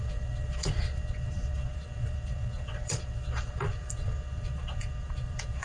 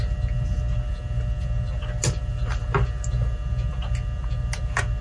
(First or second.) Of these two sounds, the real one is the second